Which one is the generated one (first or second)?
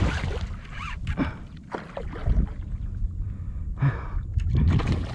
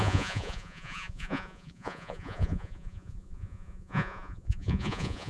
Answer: second